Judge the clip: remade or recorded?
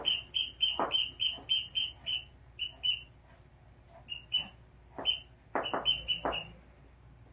recorded